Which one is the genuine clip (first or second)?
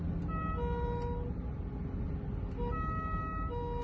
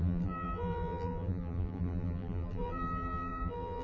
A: first